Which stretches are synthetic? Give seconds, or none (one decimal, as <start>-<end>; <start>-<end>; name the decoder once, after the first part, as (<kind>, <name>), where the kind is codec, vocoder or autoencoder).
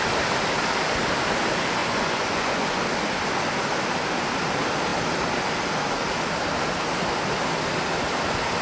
1.8-2.8 (vocoder, Vocos)